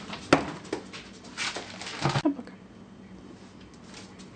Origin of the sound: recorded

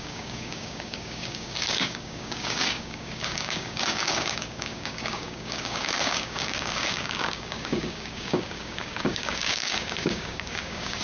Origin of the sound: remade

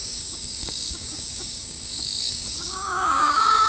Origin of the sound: remade